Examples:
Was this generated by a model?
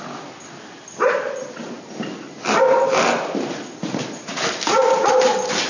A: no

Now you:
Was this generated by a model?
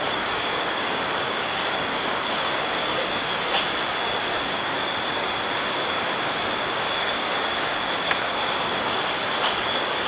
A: yes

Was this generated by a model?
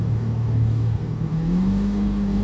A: yes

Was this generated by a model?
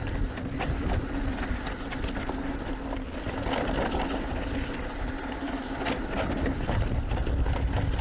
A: no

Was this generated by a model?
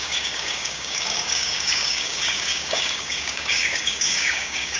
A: yes